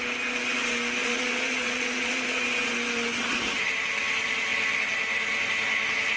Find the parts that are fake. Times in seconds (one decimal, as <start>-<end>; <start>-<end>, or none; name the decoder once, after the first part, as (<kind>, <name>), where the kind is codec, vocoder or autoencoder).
1.0-2.4 (vocoder, Vocos)